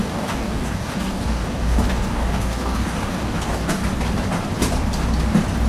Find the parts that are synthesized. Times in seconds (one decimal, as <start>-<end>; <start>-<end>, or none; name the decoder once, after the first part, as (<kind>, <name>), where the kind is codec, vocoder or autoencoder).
0.0-3.8 (codec, DAC)